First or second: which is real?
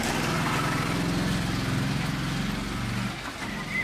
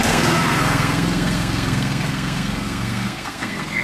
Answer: first